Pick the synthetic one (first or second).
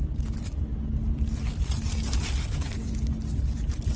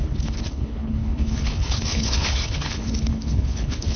second